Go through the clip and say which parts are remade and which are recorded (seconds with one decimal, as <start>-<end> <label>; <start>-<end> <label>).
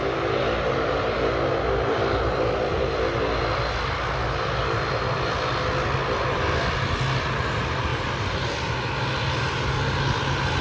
0.0-10.6 recorded